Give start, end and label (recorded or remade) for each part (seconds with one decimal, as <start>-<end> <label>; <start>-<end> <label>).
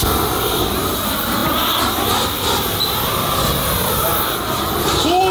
0.0-5.3 recorded